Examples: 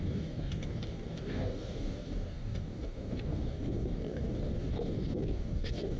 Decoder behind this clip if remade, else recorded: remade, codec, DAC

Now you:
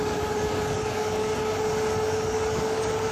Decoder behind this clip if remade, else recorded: remade, codec, DAC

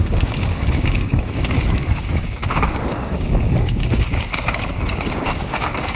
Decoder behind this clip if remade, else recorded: remade, codec, DAC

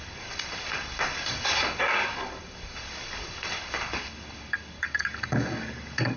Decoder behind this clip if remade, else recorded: remade, codec, DAC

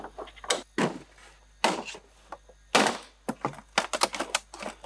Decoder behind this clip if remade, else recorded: recorded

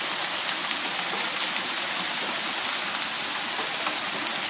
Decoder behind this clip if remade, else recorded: recorded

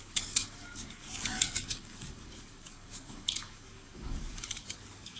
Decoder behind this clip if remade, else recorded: remade, codec, DAC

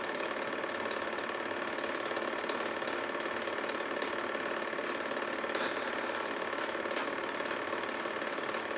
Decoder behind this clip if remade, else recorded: recorded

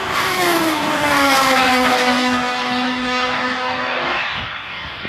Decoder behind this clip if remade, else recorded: remade, codec, DAC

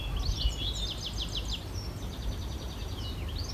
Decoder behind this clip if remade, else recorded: recorded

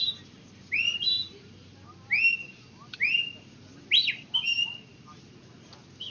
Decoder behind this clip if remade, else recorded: recorded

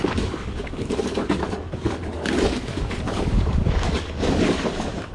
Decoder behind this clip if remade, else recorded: remade, codec, DAC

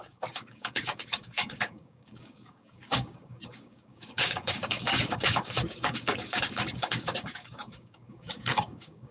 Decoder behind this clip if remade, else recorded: remade, codec, DAC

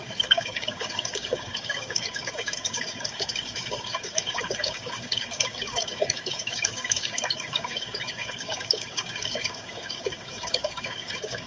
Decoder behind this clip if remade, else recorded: remade, codec, DAC